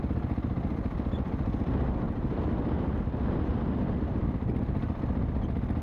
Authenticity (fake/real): real